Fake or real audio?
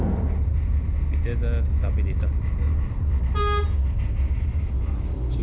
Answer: real